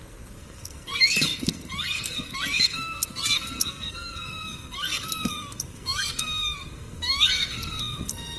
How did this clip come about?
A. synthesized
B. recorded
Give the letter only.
A